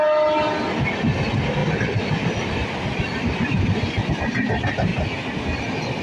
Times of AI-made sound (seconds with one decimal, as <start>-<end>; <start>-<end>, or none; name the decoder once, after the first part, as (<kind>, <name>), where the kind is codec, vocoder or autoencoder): 1.6-4.1 (vocoder, BigVGAN v2)